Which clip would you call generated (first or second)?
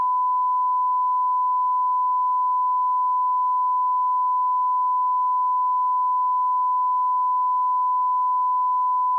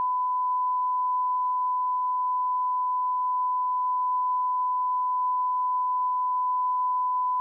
second